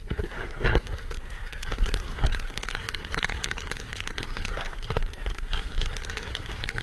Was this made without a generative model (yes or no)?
no